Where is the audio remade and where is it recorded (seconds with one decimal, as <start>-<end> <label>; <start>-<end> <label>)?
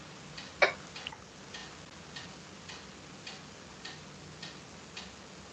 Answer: 0.0-5.5 recorded